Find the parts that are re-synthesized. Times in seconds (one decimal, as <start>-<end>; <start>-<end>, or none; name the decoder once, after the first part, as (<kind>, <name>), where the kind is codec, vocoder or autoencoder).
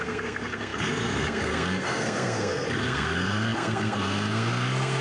0.0-5.0 (codec, SNAC)